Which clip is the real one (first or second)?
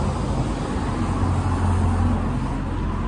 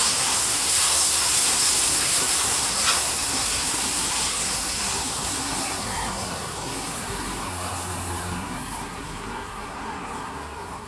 first